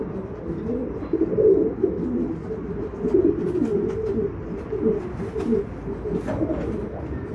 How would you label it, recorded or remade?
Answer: recorded